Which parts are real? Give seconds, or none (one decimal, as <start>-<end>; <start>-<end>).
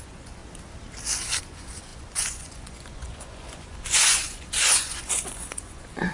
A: 0.4-1.4